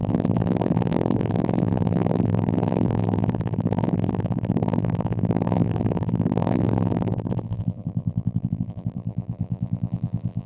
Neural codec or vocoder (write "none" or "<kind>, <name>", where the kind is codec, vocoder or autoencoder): vocoder, BigVGAN v2